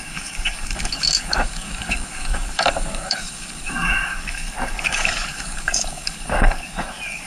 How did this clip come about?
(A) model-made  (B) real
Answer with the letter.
A